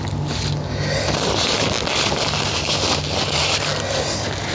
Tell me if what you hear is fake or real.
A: real